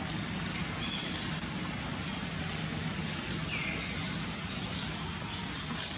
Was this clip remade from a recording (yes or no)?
no